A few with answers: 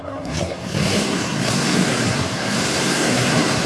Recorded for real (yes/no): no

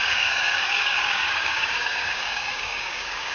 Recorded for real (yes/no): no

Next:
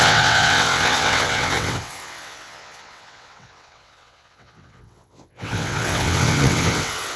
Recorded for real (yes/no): no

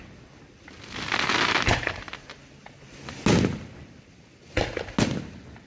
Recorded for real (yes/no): yes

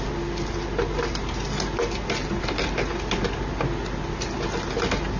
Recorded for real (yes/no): yes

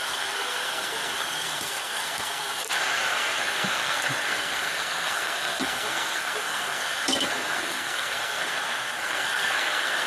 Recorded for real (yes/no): no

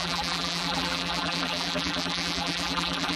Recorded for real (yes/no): no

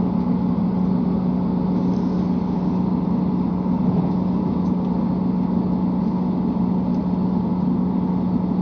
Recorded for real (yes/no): yes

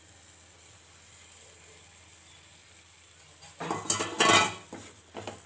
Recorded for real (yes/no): yes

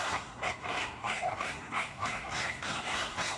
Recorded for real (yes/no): no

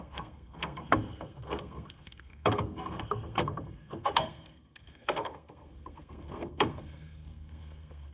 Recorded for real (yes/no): no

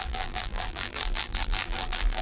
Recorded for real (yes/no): no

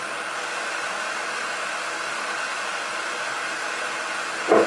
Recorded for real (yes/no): yes